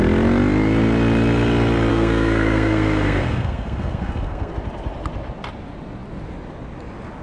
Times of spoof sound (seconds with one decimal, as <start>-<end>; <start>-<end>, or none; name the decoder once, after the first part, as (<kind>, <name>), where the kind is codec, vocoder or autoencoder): 1.9-4.5 (codec, SNAC)